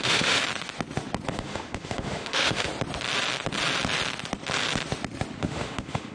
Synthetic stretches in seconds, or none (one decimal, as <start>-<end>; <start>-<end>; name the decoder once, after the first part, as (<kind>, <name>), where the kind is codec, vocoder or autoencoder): 0.0-0.4 (autoencoder, DAC-VAE); 1.3-2.7; 5.4-6.1